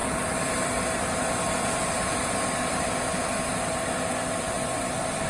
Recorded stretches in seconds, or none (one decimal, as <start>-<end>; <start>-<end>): 0.6-5.3